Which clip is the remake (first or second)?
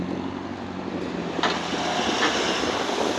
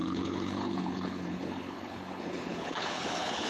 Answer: second